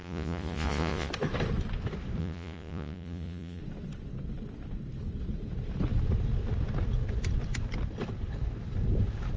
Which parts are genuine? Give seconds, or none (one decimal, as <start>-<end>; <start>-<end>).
1.1-2.2; 3.6-9.4